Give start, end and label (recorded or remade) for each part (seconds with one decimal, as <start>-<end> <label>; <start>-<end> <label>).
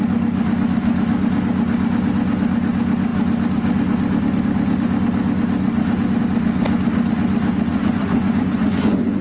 0.0-7.7 recorded; 7.7-9.2 remade